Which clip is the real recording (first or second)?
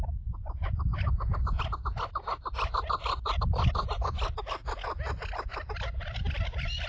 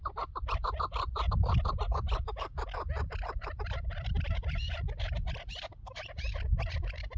first